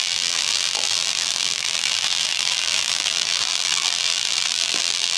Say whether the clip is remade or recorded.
remade